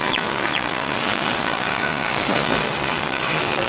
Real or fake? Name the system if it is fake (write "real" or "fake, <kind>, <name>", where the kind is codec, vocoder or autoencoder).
fake, vocoder, Vocos